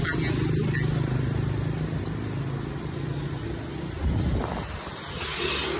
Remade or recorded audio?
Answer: recorded